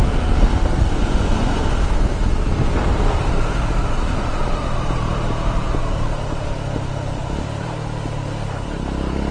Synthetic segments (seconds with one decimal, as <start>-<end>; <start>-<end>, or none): 1.0-1.6